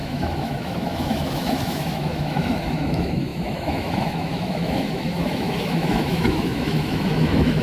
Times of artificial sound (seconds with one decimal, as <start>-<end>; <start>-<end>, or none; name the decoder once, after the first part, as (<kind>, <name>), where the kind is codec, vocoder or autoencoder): 0.0-7.6 (autoencoder, DAC-VAE)